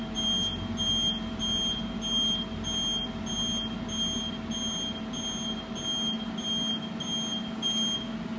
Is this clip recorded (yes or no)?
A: yes